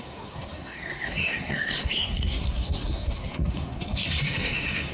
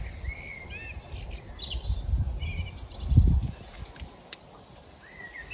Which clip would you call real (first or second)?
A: second